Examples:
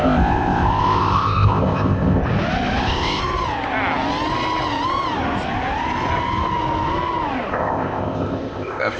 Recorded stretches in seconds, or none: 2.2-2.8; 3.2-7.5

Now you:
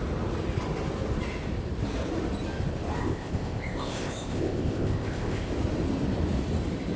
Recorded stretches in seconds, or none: 0.0-3.0; 5.5-7.0